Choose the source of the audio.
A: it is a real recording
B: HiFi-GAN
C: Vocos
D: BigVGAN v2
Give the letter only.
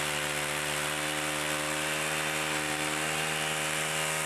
A